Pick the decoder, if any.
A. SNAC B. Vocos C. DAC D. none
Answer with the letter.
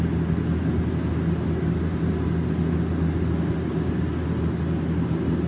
D